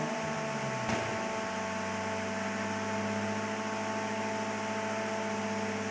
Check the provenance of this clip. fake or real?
real